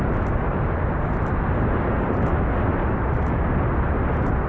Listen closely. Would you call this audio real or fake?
real